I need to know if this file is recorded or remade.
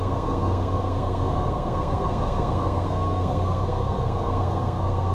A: remade